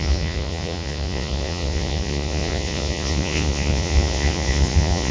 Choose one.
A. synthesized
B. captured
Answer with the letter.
A